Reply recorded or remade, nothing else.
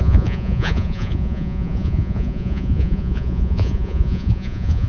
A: remade